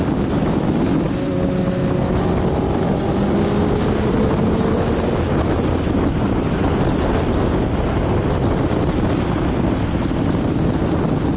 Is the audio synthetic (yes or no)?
no